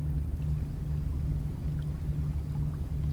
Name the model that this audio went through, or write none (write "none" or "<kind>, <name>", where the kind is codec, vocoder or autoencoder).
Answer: none